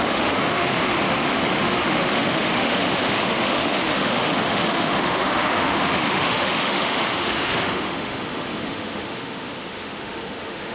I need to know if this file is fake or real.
fake